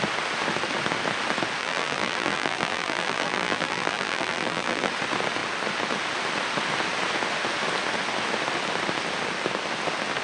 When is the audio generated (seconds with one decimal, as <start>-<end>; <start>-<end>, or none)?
1.6-4.9